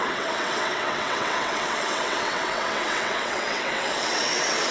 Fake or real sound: fake